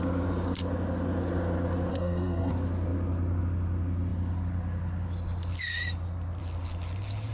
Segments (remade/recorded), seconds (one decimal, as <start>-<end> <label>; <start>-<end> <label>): 0.0-1.9 recorded; 1.9-2.5 remade; 2.5-7.3 recorded